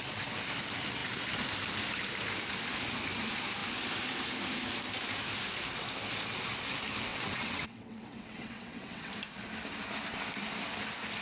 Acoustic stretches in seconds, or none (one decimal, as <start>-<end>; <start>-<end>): 0.0-7.1; 9.1-11.2